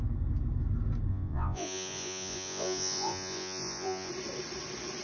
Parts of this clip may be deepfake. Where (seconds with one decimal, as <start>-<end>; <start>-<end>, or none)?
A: 1.1-4.1